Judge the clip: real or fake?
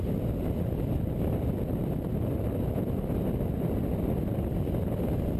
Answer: real